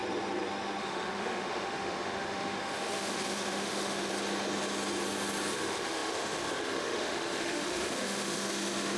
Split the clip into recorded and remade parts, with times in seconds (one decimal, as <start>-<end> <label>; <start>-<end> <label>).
0.0-0.8 recorded; 0.8-4.1 remade; 4.1-5.5 recorded; 5.5-9.0 remade